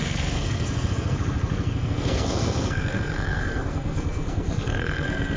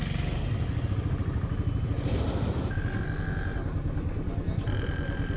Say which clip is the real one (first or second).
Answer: second